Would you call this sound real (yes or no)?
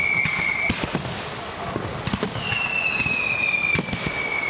yes